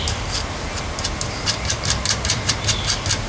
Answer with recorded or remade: recorded